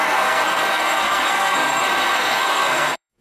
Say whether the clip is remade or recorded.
remade